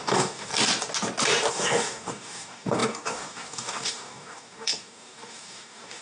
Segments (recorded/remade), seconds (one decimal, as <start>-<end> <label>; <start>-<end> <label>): 0.0-0.5 remade; 0.5-1.5 recorded; 1.5-6.0 remade